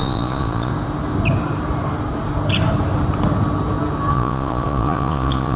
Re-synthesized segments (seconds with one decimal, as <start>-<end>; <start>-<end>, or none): 0.0-0.7; 4.1-5.6